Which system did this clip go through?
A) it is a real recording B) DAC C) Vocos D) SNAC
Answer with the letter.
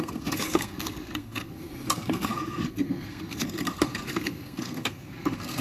D